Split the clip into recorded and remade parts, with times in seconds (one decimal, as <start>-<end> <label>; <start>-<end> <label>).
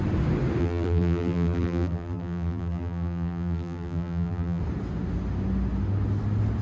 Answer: 0.0-0.6 recorded; 0.6-4.6 remade; 4.6-6.6 recorded